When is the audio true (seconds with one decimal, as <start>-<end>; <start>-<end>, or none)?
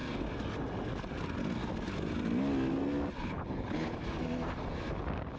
0.0-3.2; 4.0-5.4